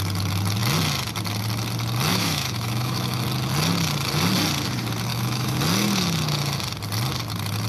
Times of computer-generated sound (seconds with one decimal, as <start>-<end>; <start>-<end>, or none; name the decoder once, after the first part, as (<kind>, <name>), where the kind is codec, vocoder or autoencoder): 2.1-3.2 (autoencoder, DAC-VAE); 5.1-5.6